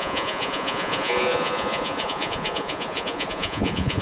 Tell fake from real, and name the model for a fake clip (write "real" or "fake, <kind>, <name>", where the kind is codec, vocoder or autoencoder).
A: fake, vocoder, Vocos